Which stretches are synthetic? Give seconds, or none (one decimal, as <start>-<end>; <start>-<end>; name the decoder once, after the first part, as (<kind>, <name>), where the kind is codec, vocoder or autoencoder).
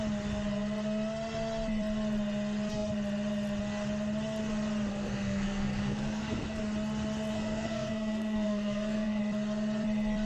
4.9-6.6 (codec, SNAC); 7.3-9.2